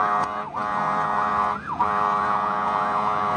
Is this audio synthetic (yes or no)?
yes